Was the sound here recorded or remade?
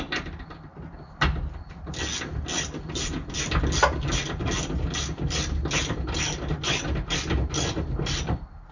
recorded